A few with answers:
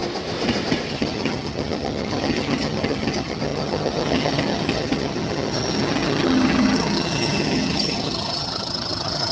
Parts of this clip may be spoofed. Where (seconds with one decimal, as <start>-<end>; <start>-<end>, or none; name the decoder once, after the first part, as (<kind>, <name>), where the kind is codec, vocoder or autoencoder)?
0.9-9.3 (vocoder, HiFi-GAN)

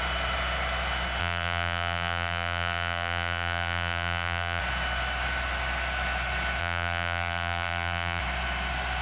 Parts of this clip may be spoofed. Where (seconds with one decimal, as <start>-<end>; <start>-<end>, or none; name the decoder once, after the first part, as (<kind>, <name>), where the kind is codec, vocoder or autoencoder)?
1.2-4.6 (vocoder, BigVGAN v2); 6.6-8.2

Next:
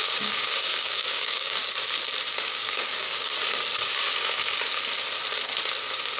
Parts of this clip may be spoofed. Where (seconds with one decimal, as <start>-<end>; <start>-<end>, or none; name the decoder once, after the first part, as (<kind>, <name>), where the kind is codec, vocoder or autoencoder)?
0.0-1.6 (codec, DAC); 2.4-3.3

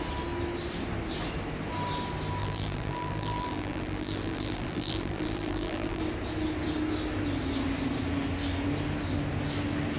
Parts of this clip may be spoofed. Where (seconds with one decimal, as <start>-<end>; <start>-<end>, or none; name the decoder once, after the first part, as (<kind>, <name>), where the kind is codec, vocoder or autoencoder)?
2.4-6.0 (vocoder, BigVGAN v2)

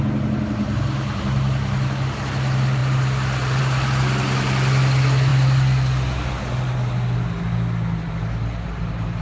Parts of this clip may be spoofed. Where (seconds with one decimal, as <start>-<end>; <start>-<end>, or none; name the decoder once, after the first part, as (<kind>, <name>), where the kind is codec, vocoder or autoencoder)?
none